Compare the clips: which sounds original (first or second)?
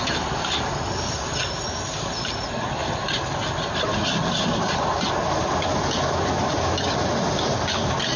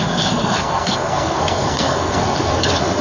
first